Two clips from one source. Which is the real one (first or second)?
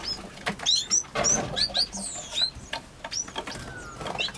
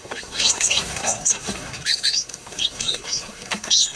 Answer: first